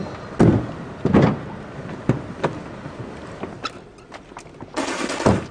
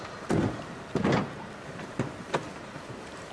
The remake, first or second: second